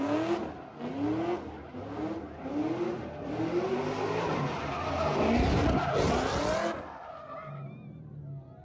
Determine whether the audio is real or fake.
real